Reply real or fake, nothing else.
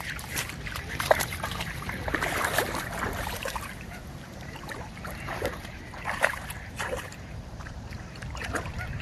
fake